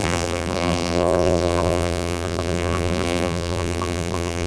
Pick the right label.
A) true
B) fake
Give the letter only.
B